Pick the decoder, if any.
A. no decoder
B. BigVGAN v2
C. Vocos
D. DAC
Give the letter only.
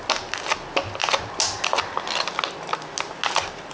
A